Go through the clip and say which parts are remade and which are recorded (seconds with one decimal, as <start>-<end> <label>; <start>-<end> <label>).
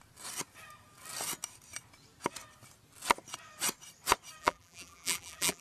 0.0-4.4 recorded; 4.4-5.6 remade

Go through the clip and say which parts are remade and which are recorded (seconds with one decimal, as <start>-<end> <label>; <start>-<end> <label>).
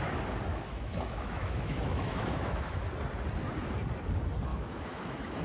0.0-0.5 recorded; 0.5-2.8 remade; 2.8-4.5 recorded; 4.5-5.4 remade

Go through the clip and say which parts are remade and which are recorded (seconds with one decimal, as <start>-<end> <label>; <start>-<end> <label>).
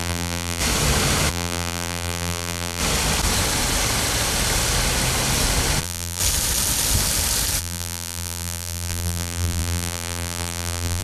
0.0-0.6 remade; 0.6-1.3 recorded; 1.3-2.8 remade; 2.8-5.8 recorded; 5.8-6.2 remade; 6.2-7.6 recorded; 7.6-11.0 remade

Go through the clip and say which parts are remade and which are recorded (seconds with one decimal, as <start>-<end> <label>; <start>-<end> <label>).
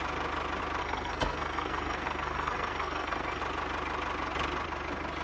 0.0-0.8 recorded; 0.8-3.4 remade; 3.4-5.2 recorded